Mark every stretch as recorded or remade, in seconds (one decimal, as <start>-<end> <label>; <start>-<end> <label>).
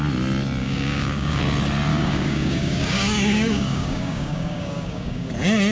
0.0-0.6 recorded; 0.6-1.4 remade; 1.4-1.9 recorded; 1.9-5.3 remade; 5.3-5.7 recorded